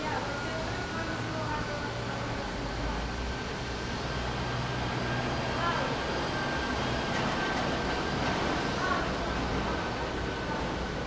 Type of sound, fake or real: real